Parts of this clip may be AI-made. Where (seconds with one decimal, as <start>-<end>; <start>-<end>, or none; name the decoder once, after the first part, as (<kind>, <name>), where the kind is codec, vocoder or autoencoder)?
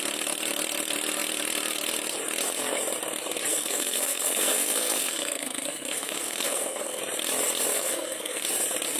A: 3.5-7.0 (codec, SNAC); 7.7-8.4